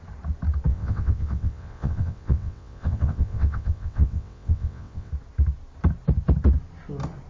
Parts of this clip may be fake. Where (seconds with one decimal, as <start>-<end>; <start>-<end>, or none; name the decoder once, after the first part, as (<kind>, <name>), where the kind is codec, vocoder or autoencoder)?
0.7-5.1 (vocoder, WaveNeXt)